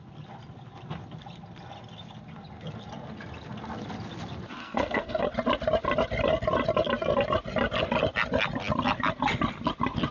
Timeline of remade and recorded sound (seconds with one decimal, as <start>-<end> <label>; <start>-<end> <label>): 0.0-4.6 recorded; 4.6-5.2 remade; 5.2-10.1 recorded